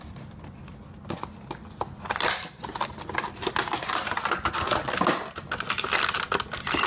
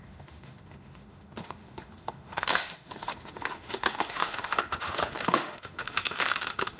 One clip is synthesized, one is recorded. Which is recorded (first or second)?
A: first